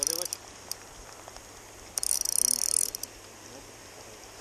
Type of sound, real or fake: real